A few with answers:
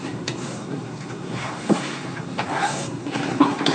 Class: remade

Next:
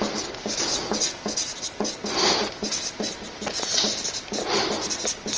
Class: recorded